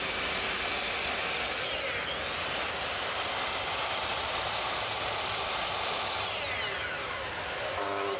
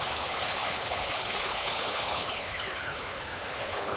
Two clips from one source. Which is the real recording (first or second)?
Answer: first